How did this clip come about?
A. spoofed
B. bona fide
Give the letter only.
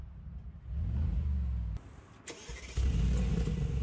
B